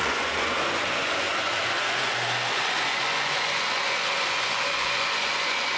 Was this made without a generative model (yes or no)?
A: no